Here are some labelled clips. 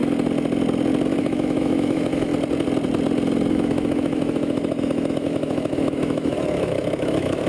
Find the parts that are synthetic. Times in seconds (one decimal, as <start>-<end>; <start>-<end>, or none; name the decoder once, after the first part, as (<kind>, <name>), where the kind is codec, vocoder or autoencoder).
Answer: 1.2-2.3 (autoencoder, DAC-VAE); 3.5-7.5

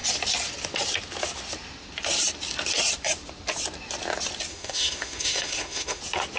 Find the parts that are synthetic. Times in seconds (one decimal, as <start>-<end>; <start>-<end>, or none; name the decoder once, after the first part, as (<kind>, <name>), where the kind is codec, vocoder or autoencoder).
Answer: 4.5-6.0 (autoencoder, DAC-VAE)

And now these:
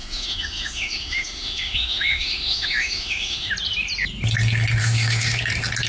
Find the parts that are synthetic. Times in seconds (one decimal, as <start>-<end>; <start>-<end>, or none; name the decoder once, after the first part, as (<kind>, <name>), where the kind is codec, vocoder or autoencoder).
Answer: 0.0-3.5 (autoencoder, DAC-VAE); 4.8-5.4

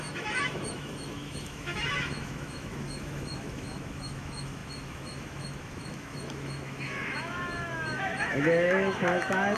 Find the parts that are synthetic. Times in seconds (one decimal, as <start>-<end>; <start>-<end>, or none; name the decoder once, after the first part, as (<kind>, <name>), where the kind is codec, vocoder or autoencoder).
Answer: 0.0-9.6 (autoencoder, DAC-VAE)